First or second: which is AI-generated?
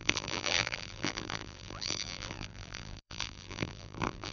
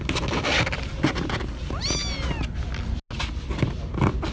first